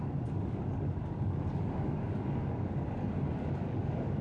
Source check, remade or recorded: remade